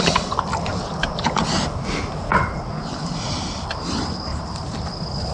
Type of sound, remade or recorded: recorded